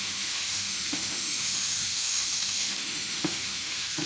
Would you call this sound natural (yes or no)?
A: no